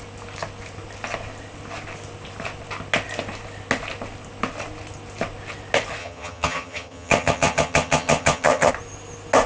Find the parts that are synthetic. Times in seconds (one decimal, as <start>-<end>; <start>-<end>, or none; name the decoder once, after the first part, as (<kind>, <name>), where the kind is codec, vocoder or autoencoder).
6.0-8.7 (vocoder, HiFi-GAN)